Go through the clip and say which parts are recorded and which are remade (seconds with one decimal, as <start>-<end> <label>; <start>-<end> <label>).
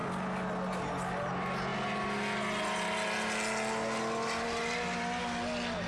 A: 0.0-5.9 recorded